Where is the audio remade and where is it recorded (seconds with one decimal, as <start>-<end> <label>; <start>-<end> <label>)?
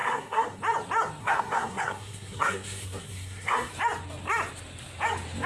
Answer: 0.0-0.6 remade; 0.6-1.2 recorded; 1.2-3.7 remade; 3.7-5.5 recorded